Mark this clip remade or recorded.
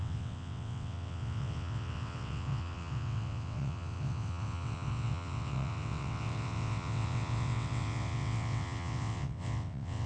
remade